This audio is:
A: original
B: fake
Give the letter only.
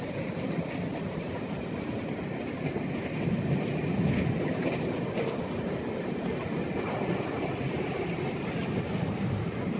A